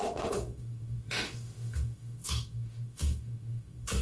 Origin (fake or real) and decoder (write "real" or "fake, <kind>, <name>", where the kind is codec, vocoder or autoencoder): fake, autoencoder, DAC-VAE